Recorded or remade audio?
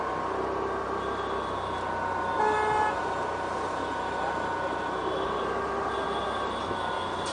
recorded